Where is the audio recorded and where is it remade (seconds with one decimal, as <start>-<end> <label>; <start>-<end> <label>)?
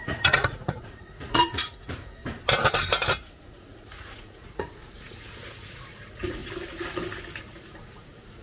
0.0-2.2 remade; 2.2-3.4 recorded; 3.4-6.4 remade; 6.4-7.4 recorded; 7.4-8.4 remade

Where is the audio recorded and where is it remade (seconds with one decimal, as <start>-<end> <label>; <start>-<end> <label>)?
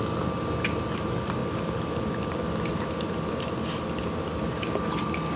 0.0-5.4 recorded